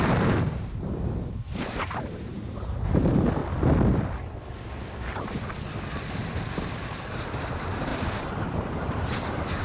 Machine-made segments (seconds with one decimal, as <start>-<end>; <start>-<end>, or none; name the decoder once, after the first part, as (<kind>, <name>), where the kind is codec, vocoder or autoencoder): 0.0-3.4 (vocoder, BigVGAN v2); 6.1-9.6